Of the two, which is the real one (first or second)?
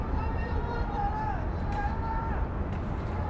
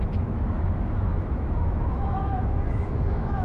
first